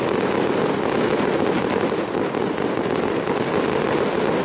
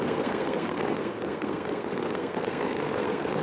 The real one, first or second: first